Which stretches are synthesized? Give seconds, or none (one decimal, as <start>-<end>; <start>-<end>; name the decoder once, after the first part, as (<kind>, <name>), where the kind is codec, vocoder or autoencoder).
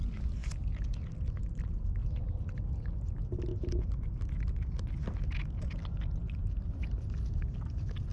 none